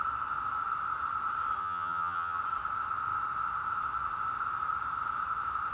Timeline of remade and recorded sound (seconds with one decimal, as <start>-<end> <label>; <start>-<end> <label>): 0.0-1.6 recorded; 1.6-2.4 remade; 2.4-5.7 recorded